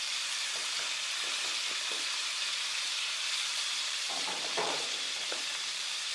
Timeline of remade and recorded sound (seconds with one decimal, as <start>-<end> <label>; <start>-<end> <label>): 0.0-0.6 remade; 0.6-2.1 recorded; 2.1-6.1 remade